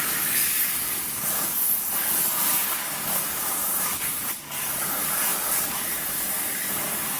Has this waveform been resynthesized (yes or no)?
yes